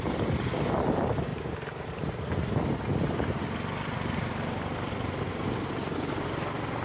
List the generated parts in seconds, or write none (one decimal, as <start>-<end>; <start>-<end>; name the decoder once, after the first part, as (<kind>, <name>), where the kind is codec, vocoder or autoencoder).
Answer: none